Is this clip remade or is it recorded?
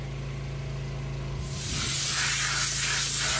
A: recorded